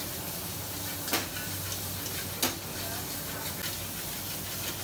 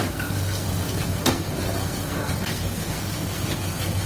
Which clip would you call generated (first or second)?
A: second